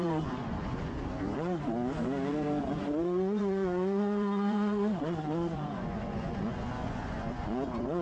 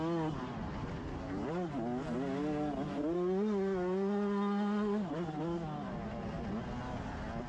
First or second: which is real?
second